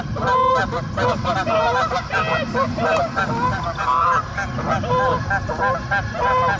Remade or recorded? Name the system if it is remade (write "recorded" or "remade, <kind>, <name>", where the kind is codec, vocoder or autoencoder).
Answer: recorded